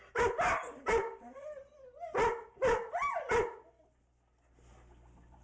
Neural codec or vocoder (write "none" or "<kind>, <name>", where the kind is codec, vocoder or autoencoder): none